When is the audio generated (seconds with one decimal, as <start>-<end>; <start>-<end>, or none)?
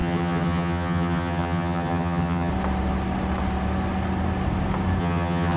0.0-2.5; 5.0-5.6